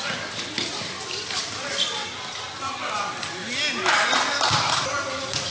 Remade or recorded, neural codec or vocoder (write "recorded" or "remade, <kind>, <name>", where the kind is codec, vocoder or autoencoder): recorded